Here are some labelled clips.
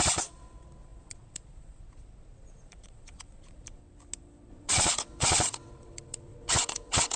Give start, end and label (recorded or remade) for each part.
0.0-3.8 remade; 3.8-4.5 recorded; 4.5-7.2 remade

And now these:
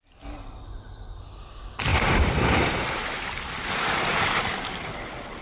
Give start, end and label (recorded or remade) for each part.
0.0-1.9 recorded; 1.9-5.4 remade